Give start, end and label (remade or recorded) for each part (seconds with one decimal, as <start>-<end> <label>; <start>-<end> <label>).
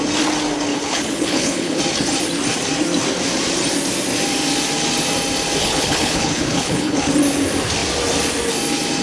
0.0-0.7 recorded; 0.7-1.8 remade; 1.8-5.6 recorded; 5.6-7.1 remade; 7.1-9.0 recorded